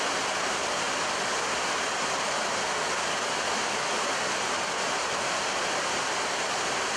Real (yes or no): yes